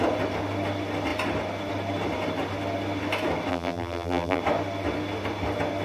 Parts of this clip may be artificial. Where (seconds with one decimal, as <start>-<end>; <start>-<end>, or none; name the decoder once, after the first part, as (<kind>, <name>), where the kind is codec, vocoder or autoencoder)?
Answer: 3.5-4.4 (vocoder, BigVGAN v2)